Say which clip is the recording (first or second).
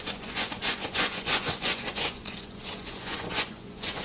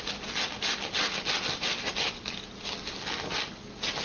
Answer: second